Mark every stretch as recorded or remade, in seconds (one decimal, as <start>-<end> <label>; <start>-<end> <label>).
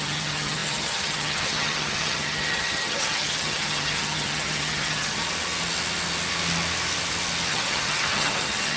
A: 0.0-5.2 remade; 5.2-7.5 recorded; 7.5-8.8 remade